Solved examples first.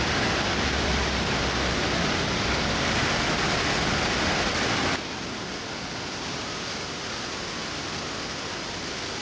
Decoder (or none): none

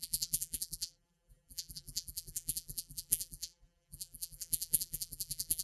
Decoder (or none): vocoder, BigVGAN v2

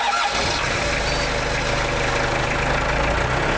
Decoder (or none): none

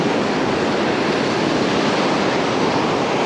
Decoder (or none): none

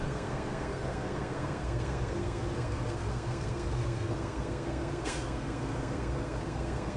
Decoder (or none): codec, SNAC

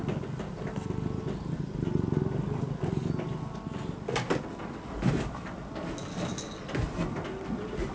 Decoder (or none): none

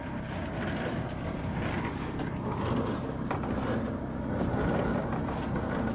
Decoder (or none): none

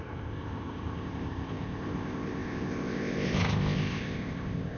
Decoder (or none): codec, ZipCodec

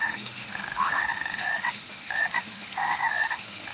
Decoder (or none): autoencoder, DAC-VAE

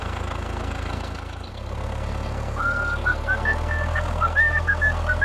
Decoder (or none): codec, SNAC